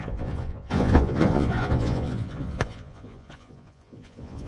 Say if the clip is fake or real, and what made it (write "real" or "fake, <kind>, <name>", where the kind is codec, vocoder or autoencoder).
fake, vocoder, Vocos